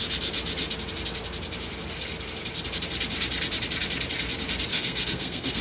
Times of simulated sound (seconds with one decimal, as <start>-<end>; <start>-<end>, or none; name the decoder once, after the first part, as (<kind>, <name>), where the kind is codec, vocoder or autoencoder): 4.7-5.6 (codec, SNAC)

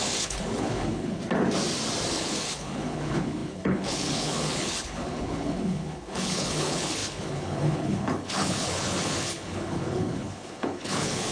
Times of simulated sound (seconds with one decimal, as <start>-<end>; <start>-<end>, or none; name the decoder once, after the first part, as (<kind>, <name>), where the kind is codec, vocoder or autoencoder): 0.0-1.2 (codec, HILCodec); 2.1-11.3

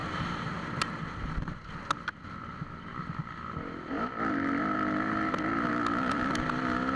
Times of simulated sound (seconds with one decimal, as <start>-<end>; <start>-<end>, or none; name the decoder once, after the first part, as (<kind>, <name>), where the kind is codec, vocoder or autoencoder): none

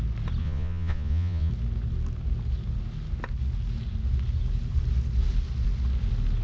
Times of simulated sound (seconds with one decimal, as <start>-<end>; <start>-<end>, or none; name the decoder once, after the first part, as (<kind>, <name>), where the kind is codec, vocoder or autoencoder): 0.4-1.5 (vocoder, Vocos)

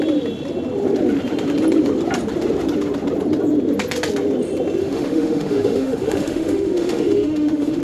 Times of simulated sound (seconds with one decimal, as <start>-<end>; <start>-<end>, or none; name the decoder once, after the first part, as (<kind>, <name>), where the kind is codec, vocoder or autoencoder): 4.8-7.8 (autoencoder, DAC-VAE)